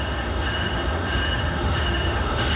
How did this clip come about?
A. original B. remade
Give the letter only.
B